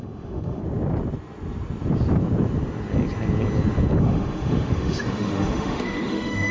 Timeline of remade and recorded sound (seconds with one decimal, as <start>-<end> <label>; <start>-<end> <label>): 0.0-0.6 remade; 0.6-4.0 recorded; 4.0-6.5 remade